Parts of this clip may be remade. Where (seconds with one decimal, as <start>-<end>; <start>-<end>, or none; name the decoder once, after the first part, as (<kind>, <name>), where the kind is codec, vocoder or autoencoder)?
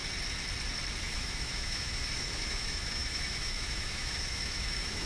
1.0-5.1 (autoencoder, DAC-VAE)